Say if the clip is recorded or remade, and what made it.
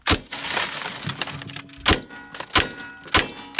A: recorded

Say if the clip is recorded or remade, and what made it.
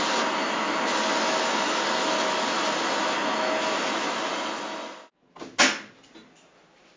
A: recorded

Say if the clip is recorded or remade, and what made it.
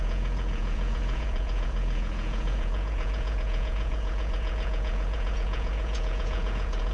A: remade, vocoder, Vocos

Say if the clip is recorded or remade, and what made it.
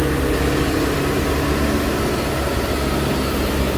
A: recorded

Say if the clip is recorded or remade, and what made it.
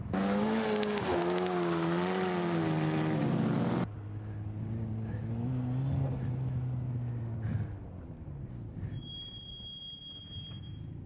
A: recorded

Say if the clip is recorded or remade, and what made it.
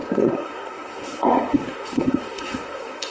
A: remade, codec, SNAC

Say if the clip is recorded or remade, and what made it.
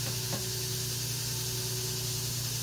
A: recorded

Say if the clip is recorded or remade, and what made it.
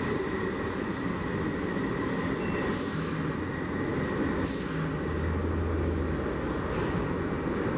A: recorded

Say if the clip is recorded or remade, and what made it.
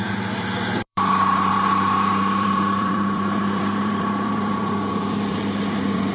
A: remade, vocoder, BigVGAN v2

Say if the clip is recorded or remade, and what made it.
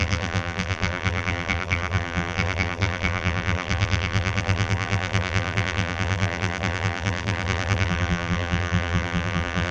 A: remade, vocoder, BigVGAN v2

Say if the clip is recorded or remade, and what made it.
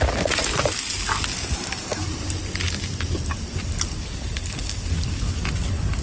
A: recorded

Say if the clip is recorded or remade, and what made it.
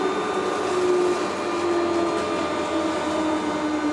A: recorded